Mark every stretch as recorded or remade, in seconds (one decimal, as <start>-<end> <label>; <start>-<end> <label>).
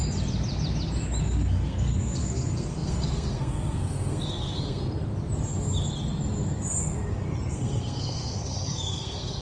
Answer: 0.0-1.2 recorded; 1.2-4.8 remade; 4.8-7.5 recorded; 7.5-9.4 remade